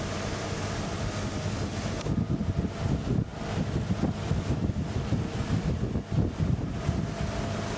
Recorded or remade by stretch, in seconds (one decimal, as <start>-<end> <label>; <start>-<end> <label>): 0.0-7.8 recorded